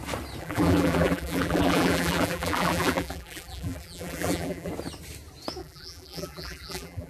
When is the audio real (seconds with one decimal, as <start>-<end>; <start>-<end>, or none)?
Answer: 0.0-0.4; 4.7-5.6